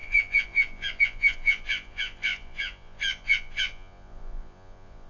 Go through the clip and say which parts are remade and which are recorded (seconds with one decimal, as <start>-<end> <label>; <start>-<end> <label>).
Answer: 0.0-5.1 remade